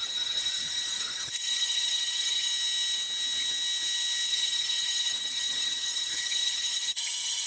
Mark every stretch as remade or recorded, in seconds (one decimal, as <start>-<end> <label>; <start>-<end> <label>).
0.0-2.5 remade; 2.5-4.3 recorded; 4.3-7.5 remade